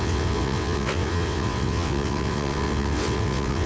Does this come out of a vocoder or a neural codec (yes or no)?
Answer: yes